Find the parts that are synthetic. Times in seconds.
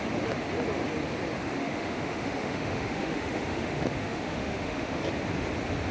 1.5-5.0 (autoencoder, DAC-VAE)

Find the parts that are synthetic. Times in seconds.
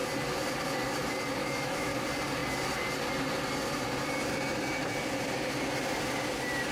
1.4-1.9 (autoencoder, DAC-VAE)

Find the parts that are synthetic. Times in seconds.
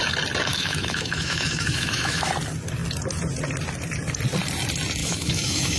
0.5-2.3 (autoencoder, DAC-VAE); 5.0-5.8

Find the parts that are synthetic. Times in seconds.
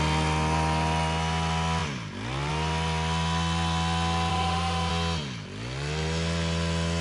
4.3-4.9 (autoencoder, DAC-VAE)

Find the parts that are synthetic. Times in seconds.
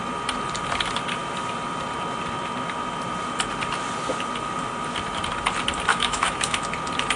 5.9-6.6 (autoencoder, DAC-VAE)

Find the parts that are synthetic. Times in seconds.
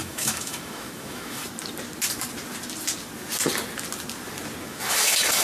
0.0-1.4 (autoencoder, DAC-VAE); 4.6-5.4